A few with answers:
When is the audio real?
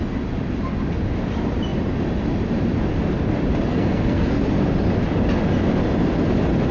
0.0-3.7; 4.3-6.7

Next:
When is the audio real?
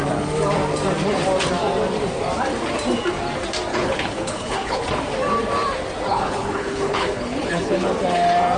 0.0-3.7; 4.8-6.1; 7.9-8.6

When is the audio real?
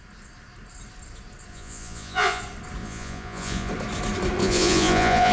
0.0-1.5; 2.4-2.8; 3.7-4.4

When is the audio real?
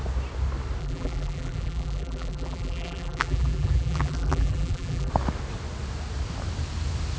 0.0-0.8; 5.1-7.2